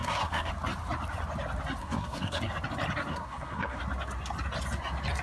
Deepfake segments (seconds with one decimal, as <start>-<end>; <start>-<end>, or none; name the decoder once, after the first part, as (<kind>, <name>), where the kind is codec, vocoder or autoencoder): 0.0-0.5 (codec, SNAC); 1.8-2.4; 3.1-3.8